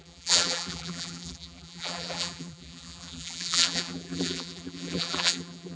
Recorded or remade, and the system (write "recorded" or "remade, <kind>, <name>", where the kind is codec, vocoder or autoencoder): remade, vocoder, BigVGAN v2